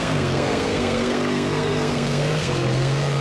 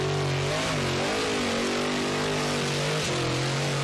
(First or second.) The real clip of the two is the second